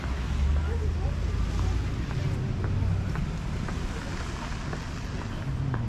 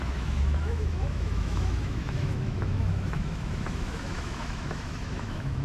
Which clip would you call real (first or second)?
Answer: first